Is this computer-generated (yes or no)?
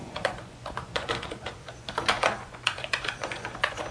yes